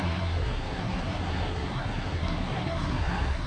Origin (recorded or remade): remade